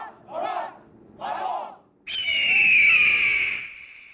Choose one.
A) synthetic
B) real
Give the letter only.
B